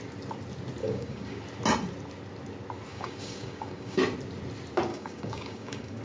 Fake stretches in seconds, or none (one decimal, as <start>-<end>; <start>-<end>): 0.8-1.4; 2.9-4.0; 4.9-6.0